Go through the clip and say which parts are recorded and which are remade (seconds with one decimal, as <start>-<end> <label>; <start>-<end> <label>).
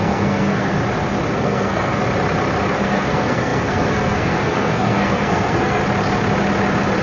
0.0-0.8 remade; 0.8-1.3 recorded; 1.3-2.0 remade; 2.0-2.7 recorded; 2.7-5.8 remade; 5.8-7.0 recorded